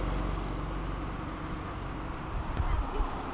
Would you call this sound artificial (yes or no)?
no